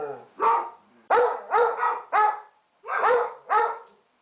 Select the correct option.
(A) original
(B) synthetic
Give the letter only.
A